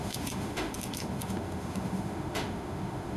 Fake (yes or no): yes